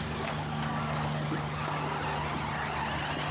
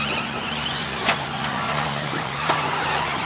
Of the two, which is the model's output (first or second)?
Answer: second